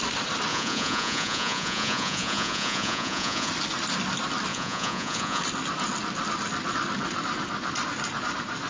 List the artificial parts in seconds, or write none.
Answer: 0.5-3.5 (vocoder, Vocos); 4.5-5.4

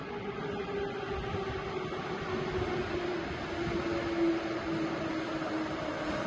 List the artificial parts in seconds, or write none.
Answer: none

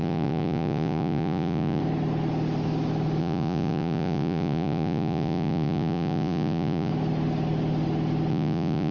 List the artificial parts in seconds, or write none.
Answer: 0.0-1.8 (vocoder, Vocos); 3.2-6.9; 8.3-8.9

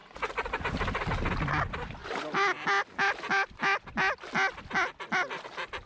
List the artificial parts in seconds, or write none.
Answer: 0.0-0.6 (vocoder, Vocos)

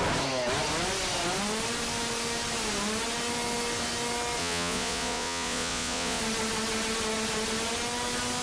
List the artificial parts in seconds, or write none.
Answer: 4.4-6.2 (vocoder, Vocos)